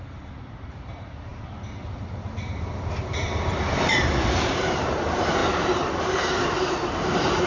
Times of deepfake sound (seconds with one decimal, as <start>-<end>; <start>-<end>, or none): 0.0-5.4; 5.9-7.5